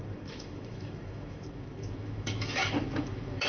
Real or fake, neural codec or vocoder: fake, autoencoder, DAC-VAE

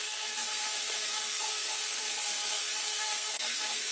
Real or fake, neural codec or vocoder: fake, codec, SNAC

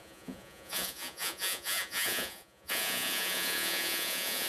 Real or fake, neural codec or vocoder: fake, vocoder, Vocos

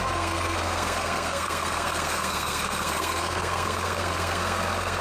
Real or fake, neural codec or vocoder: fake, codec, SNAC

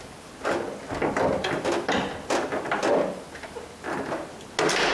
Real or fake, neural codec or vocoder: real